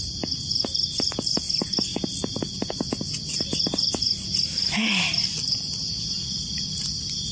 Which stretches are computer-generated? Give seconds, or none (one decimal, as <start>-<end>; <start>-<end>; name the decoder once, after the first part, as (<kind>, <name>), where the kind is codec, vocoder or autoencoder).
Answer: none